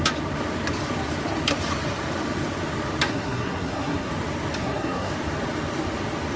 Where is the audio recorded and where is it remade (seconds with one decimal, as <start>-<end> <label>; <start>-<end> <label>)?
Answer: 0.0-3.1 recorded; 3.1-4.1 remade; 4.1-4.6 recorded; 4.6-5.1 remade; 5.1-6.4 recorded